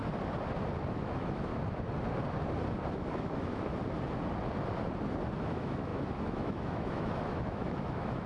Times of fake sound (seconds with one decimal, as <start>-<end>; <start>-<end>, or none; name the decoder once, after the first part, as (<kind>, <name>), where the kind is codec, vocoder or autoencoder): 0.9-1.5 (autoencoder, DAC-VAE); 2.9-3.8; 5.5-8.3